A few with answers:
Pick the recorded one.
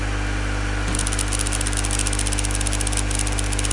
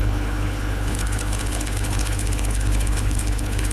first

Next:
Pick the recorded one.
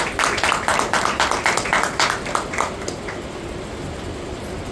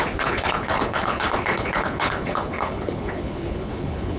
first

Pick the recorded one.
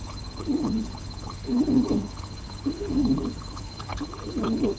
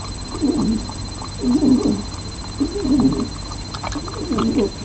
second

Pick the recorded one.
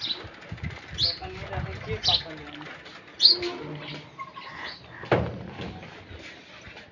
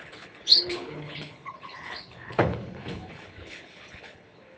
first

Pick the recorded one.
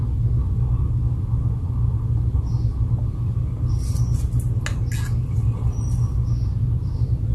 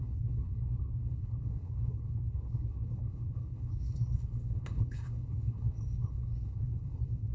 first